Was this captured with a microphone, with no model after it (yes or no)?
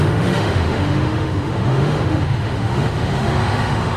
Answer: no